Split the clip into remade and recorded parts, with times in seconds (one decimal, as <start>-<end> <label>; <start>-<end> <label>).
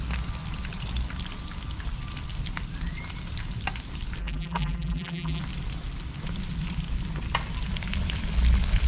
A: 0.0-4.2 recorded; 4.2-5.4 remade; 5.4-8.9 recorded